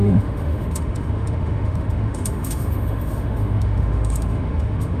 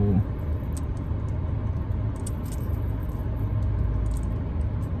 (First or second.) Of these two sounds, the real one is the second